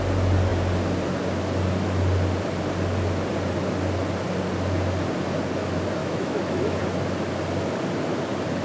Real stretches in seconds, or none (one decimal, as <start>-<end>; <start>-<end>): 0.0-6.0; 6.8-8.6